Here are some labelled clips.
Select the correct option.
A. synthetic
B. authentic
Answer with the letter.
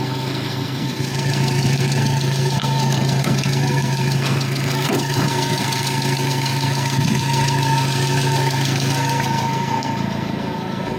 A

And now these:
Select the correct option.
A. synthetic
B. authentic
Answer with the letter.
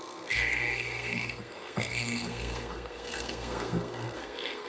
A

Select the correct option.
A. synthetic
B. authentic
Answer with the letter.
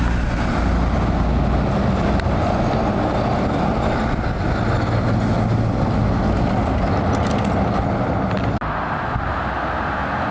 B